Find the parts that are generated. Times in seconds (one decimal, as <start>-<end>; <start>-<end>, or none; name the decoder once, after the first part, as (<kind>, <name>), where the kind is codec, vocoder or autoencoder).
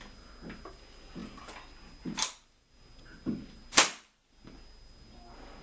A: none